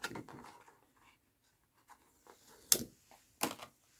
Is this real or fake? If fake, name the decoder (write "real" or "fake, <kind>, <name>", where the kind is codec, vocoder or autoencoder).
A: real